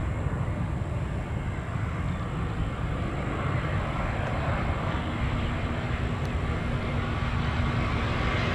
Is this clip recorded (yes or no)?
yes